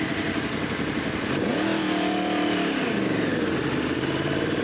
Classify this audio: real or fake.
fake